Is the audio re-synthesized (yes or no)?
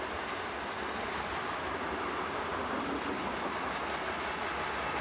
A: no